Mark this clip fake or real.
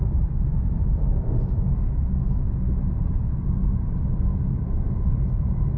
real